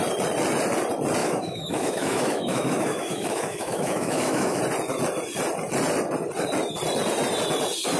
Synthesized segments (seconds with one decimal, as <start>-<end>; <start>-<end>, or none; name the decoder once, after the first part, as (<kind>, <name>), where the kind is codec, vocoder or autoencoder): 1.2-4.6 (autoencoder, DAC-VAE)